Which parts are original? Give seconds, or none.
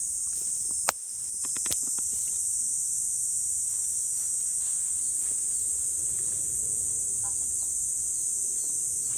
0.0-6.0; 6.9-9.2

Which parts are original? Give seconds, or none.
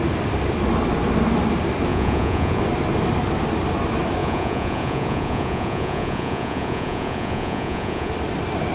0.0-1.9; 2.6-4.2; 8.1-8.7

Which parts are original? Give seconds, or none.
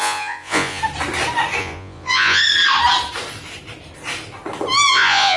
0.8-1.6; 2.4-4.9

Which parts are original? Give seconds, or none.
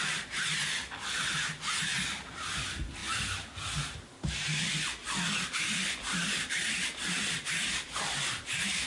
0.0-8.9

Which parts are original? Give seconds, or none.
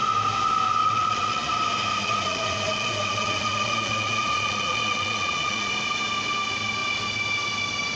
0.0-0.8; 1.5-2.0; 5.7-8.0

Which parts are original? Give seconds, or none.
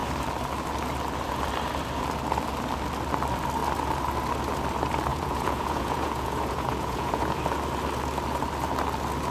0.0-5.1; 7.4-9.3